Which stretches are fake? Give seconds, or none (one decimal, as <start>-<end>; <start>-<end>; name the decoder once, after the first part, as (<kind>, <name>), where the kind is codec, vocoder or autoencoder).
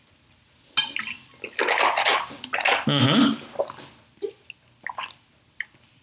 none